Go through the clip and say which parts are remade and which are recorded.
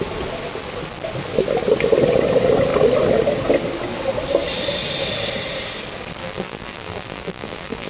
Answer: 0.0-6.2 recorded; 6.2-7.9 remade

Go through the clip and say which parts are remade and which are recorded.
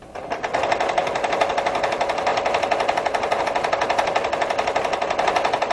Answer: 0.0-1.0 recorded; 1.0-1.5 remade; 1.5-2.3 recorded; 2.3-3.4 remade; 3.4-5.7 recorded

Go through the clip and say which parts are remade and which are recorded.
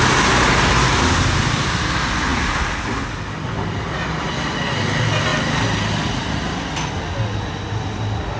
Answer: 0.0-8.4 recorded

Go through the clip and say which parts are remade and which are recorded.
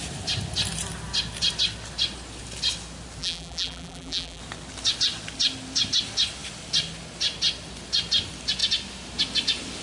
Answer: 0.0-3.2 recorded; 3.2-4.4 remade; 4.4-9.8 recorded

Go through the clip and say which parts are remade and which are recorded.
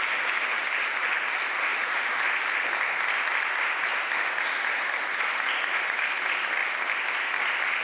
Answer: 0.0-1.7 recorded; 1.7-2.7 remade; 2.7-7.8 recorded